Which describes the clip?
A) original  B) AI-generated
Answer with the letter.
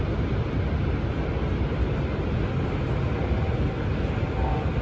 A